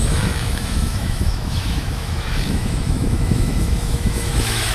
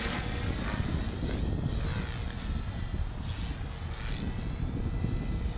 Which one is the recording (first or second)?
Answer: second